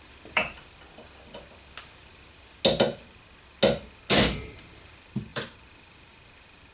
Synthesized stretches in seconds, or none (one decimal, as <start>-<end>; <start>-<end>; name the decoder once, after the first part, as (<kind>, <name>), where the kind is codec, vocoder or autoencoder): 0.0-0.4 (vocoder, BigVGAN v2); 4.4-6.7